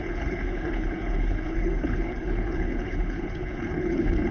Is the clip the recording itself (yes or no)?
no